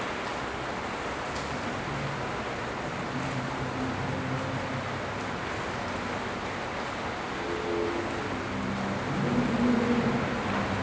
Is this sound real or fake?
real